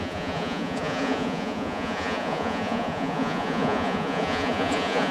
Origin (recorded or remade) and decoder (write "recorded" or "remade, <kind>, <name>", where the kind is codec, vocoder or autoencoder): remade, vocoder, Vocos